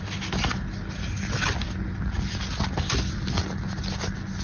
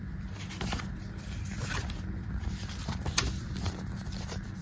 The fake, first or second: second